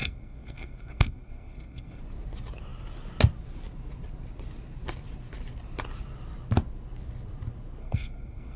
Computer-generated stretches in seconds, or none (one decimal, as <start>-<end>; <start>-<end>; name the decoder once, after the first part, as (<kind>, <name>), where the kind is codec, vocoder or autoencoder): 0.0-2.0 (codec, SNAC); 7.8-8.6